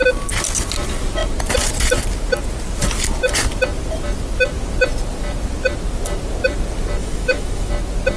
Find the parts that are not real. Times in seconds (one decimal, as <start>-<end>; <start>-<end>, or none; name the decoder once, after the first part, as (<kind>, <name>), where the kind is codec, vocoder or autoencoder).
7.0-7.7 (autoencoder, DAC-VAE)